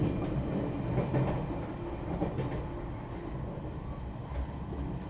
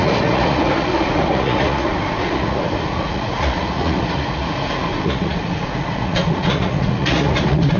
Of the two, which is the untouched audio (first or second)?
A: first